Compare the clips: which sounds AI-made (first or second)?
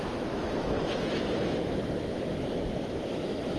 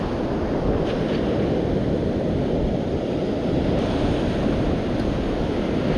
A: first